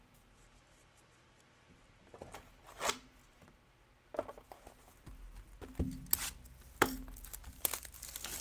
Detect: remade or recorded recorded